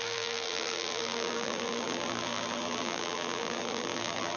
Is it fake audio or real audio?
fake